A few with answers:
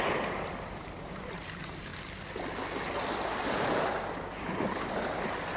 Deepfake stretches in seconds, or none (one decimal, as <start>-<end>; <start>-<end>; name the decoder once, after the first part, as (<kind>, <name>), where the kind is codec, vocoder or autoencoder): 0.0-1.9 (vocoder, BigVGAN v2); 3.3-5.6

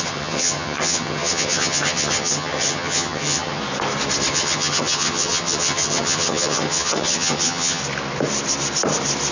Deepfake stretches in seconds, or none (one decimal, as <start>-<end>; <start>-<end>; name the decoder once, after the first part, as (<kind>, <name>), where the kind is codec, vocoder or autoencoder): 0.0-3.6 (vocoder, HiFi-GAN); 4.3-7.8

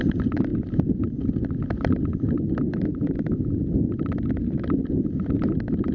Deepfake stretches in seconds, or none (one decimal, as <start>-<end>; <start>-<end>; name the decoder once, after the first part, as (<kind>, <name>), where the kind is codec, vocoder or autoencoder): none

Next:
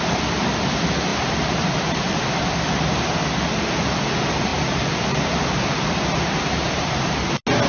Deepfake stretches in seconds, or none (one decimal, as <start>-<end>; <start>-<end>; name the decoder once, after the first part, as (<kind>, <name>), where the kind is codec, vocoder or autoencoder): 1.1-2.5 (vocoder, BigVGAN v2); 4.5-7.2